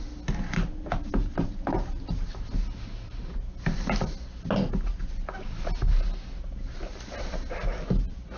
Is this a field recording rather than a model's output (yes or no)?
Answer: yes